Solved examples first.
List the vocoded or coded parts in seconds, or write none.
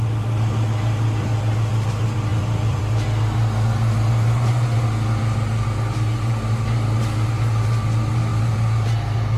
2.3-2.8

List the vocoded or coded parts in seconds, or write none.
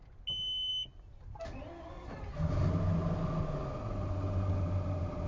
none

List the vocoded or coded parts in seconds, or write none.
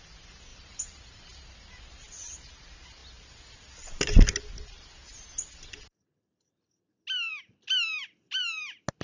0.5-2.5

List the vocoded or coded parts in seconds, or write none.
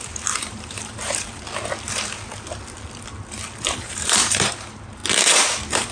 0.0-1.3; 3.7-5.0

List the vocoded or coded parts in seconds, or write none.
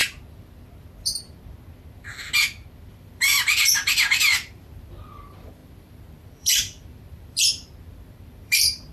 2.9-8.9